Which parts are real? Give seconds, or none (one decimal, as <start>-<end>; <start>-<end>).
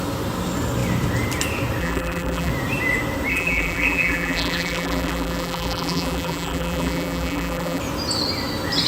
0.0-1.8; 2.5-3.3; 7.8-8.9